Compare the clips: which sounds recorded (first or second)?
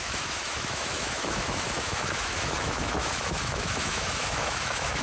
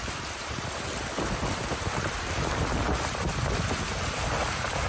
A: second